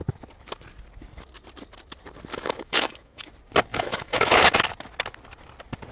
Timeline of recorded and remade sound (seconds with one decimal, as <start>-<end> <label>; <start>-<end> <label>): 0.0-2.3 recorded; 2.3-3.3 remade; 3.3-3.7 recorded; 3.7-4.5 remade; 4.5-5.9 recorded